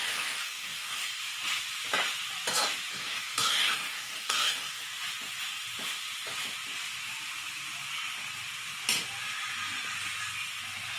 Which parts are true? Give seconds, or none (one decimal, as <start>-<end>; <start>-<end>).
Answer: 1.2-2.9; 4.8-11.0